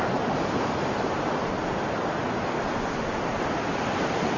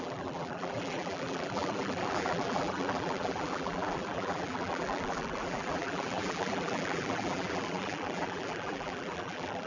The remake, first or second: second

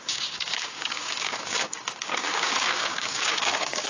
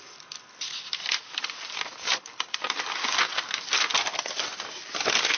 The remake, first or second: first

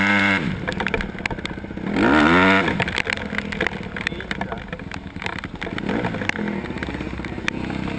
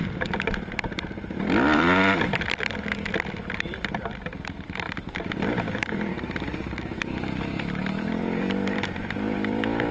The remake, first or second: second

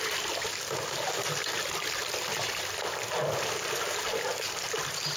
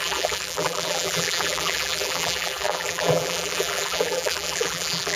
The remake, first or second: second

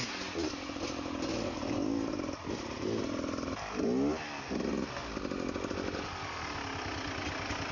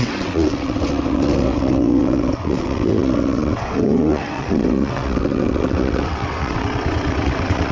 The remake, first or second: second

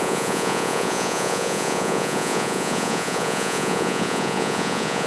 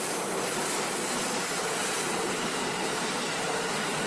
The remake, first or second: first